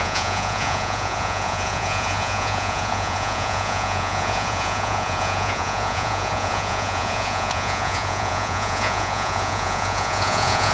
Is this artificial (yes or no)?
yes